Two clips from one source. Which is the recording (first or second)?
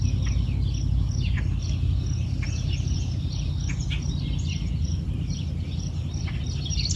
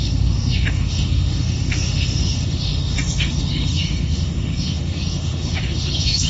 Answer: first